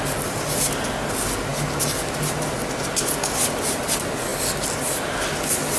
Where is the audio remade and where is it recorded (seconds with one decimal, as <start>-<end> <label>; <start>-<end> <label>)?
0.0-5.8 recorded